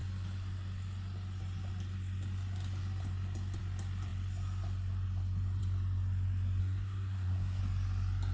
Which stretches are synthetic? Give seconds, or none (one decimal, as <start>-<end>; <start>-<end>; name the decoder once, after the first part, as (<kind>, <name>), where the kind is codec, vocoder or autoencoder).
6.6-7.6 (codec, SNAC)

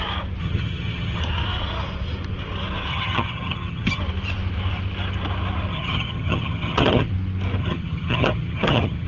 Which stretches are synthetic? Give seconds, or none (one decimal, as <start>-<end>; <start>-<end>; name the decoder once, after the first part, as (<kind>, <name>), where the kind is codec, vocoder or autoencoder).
0.4-1.2 (vocoder, HiFi-GAN); 2.9-4.0; 5.7-7.1; 7.6-9.1

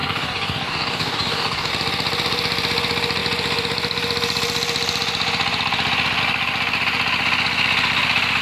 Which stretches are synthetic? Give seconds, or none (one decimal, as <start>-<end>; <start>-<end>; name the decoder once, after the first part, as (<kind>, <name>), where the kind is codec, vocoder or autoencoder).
0.0-1.7 (codec, DAC)